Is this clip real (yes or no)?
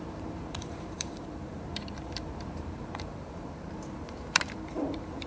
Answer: no